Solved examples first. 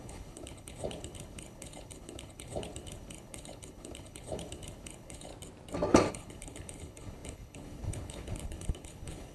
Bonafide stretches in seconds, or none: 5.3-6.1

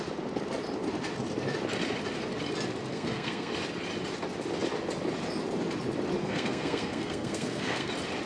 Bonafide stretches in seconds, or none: 0.0-2.9; 3.5-6.2; 7.9-8.3

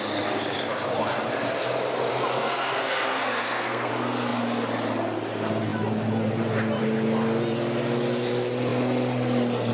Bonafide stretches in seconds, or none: 0.0-2.3; 3.9-9.7

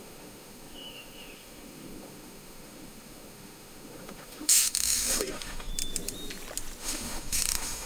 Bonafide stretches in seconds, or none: 5.7-6.8

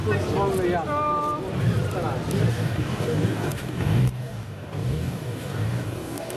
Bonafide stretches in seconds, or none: 0.0-2.5